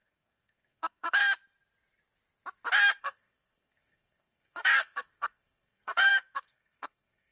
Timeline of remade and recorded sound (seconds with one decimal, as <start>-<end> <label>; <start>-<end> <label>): 0.0-1.2 remade; 1.2-3.0 recorded; 3.0-7.3 remade

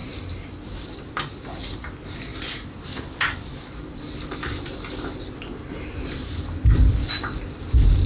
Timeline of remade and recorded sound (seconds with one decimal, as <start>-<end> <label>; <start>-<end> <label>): 0.0-8.1 recorded